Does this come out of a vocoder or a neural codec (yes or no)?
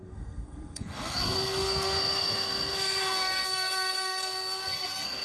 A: yes